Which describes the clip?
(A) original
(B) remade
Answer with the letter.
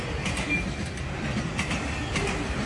A